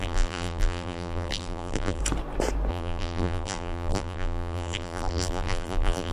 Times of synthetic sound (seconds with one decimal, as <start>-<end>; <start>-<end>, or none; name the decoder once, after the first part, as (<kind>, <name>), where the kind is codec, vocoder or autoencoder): 0.0-2.0 (vocoder, BigVGAN v2); 2.7-6.1

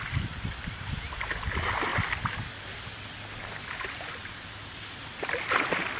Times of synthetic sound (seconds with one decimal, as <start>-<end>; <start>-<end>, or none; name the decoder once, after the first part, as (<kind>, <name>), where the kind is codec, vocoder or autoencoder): none

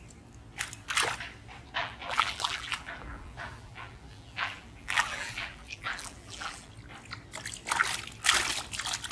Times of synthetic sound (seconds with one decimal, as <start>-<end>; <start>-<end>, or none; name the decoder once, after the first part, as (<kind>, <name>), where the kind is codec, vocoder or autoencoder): 1.8-6.7 (vocoder, BigVGAN v2)